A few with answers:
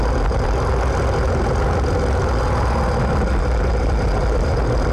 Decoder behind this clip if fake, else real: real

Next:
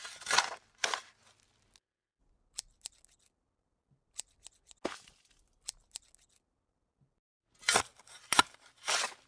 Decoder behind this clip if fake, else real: real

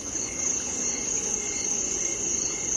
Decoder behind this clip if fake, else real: fake, vocoder, Vocos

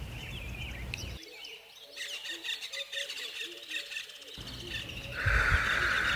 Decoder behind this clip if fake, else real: real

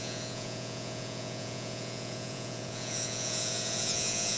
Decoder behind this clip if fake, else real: fake, vocoder, Vocos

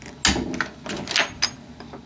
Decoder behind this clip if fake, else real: real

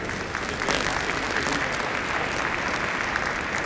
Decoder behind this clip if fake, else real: real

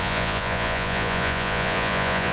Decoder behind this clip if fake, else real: fake, vocoder, Vocos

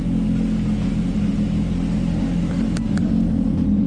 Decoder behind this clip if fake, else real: real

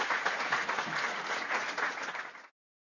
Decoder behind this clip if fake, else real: fake, vocoder, Vocos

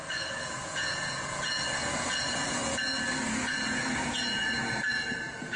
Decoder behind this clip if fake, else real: fake, vocoder, Vocos